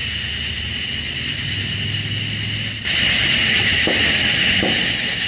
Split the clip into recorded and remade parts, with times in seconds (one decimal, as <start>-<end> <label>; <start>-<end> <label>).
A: 0.0-5.3 recorded